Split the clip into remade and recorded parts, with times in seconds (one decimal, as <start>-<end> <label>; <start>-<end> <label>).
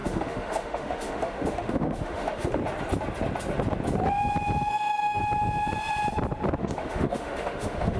0.0-2.6 remade; 2.6-4.7 recorded; 4.7-5.2 remade; 5.2-6.6 recorded; 6.6-8.0 remade